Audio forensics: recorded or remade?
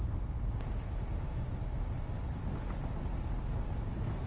recorded